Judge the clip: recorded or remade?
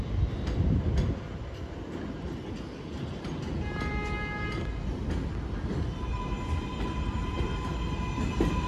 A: recorded